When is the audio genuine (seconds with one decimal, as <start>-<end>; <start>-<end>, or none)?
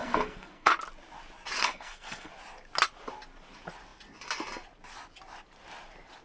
0.7-1.6; 2.3-6.2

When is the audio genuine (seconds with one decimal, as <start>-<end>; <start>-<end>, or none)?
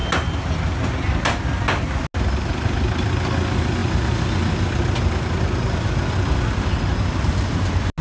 0.0-8.0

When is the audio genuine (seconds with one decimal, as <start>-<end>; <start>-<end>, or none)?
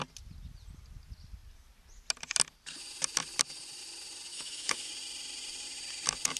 0.0-4.3; 4.9-6.4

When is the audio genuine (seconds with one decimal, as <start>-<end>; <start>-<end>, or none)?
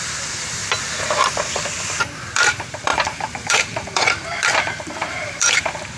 0.6-1.8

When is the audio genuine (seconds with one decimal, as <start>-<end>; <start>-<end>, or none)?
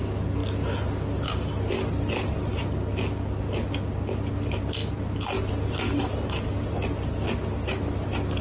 0.0-8.4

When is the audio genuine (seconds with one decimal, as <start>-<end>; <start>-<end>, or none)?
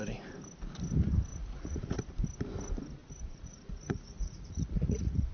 0.0-1.3; 2.0-3.0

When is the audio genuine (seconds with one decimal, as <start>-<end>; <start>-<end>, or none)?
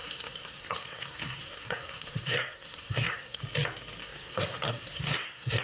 3.4-4.0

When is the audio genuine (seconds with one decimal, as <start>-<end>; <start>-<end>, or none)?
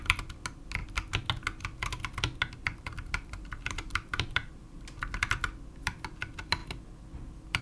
0.0-2.6; 4.8-7.6